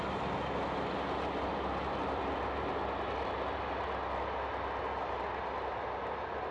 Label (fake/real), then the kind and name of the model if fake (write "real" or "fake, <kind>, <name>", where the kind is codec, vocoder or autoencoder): real